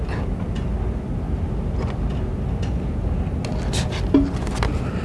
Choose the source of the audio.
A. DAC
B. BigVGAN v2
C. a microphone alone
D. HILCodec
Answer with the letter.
C